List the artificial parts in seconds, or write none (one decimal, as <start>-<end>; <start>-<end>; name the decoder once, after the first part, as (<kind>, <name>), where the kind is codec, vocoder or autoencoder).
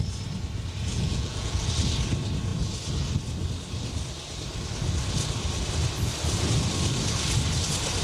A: 0.9-1.7 (vocoder, Vocos)